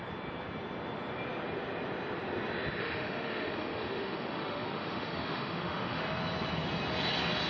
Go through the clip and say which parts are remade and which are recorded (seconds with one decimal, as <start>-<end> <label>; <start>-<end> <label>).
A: 0.0-2.8 recorded; 2.8-6.0 remade; 6.0-7.5 recorded